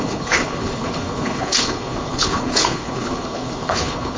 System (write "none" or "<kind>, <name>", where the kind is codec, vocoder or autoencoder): codec, HILCodec